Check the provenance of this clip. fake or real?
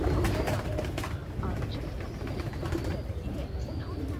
real